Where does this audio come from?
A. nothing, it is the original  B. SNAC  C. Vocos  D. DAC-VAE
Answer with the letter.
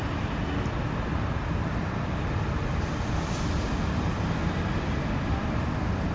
A